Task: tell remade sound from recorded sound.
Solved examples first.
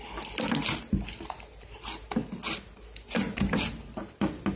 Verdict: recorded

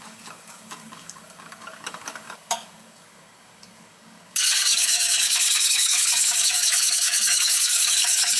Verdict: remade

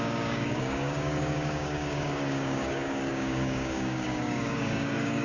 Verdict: remade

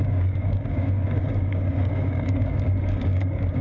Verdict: remade